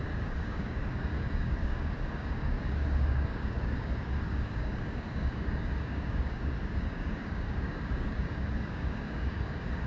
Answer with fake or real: fake